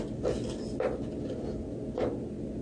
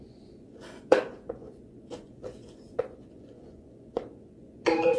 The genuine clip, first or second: first